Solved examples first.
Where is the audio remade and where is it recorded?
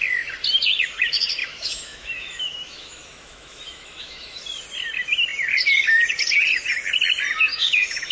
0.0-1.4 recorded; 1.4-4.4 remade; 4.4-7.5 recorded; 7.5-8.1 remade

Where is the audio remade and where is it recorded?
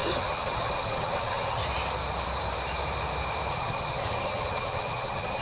0.0-1.6 remade; 1.6-3.5 recorded; 3.5-5.4 remade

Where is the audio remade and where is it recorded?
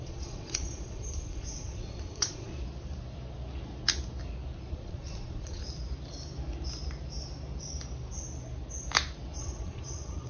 0.0-2.5 remade; 2.5-4.7 recorded; 4.7-5.6 remade; 5.6-9.4 recorded; 9.4-10.3 remade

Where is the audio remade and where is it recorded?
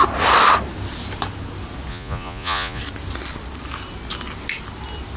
0.0-1.9 recorded; 1.9-2.8 remade; 2.8-5.2 recorded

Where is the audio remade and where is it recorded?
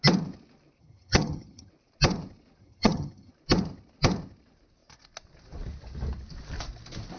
0.0-0.8 recorded; 0.8-1.7 remade; 1.7-2.6 recorded; 2.6-3.3 remade; 3.3-7.2 recorded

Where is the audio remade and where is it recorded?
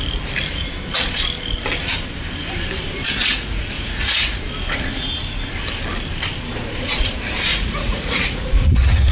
0.0-3.2 recorded; 3.2-4.4 remade; 4.4-7.5 recorded; 7.5-9.1 remade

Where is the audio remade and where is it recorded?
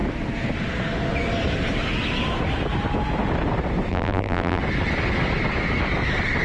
0.0-3.9 recorded; 3.9-4.6 remade; 4.6-6.4 recorded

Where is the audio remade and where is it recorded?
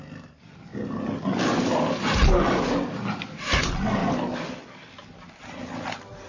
0.0-6.3 recorded